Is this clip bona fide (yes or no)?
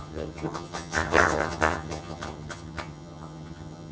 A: no